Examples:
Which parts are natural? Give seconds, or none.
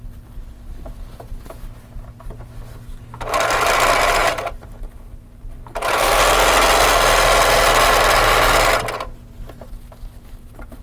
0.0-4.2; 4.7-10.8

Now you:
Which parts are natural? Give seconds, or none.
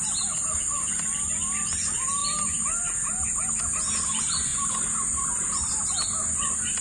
0.0-2.2; 3.6-6.8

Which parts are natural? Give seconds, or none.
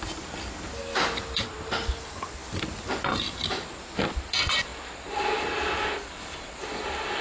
0.9-1.5; 4.7-5.4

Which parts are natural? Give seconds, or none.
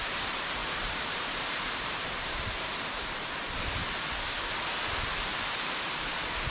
3.8-5.3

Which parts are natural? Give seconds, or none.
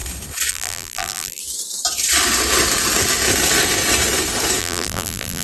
0.0-0.5; 1.4-4.6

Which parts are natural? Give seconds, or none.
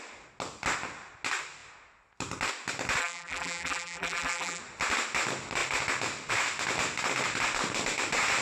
0.0-3.0; 4.6-8.4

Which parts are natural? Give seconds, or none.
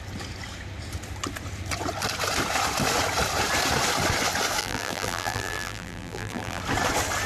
0.0-4.6; 6.6-7.3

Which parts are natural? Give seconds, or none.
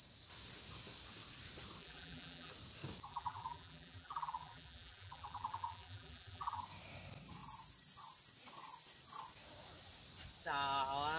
0.0-1.8; 2.5-3.1; 6.6-11.2